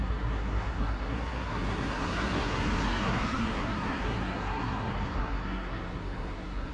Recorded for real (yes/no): no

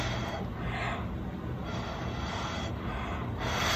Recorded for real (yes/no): yes